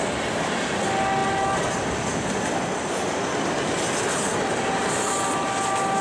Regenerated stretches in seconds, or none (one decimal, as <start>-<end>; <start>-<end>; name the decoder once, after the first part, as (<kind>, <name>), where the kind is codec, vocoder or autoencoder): none